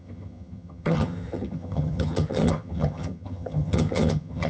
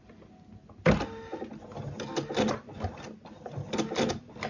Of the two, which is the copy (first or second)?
first